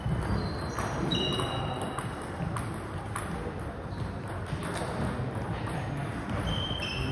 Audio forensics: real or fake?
real